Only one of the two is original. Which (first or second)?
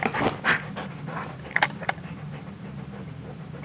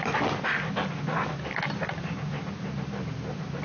second